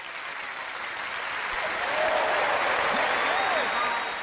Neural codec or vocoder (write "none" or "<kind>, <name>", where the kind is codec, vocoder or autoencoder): none